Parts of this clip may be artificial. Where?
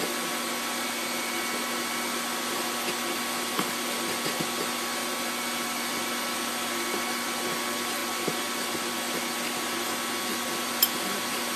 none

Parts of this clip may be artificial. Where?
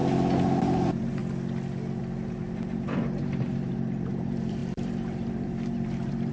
0.6-1.2 (vocoder, BigVGAN v2); 2.0-6.3